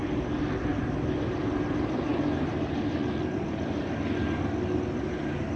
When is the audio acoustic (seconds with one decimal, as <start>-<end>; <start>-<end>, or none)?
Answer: 0.0-5.6